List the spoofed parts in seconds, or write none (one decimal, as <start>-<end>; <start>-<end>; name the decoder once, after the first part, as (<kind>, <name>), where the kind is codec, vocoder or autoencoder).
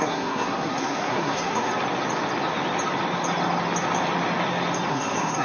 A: 0.0-1.7 (codec, SNAC); 4.9-5.4